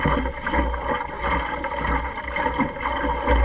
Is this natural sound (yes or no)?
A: yes